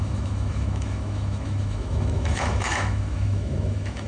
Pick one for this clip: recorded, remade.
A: remade